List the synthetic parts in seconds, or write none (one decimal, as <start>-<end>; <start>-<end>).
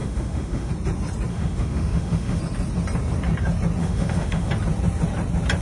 0.0-0.7; 1.3-2.4; 3.8-4.5